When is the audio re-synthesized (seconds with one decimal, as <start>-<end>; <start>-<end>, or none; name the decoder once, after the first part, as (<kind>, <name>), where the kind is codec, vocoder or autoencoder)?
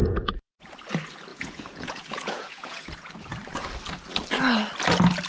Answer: 0.0-0.6 (vocoder, Vocos); 1.3-3.1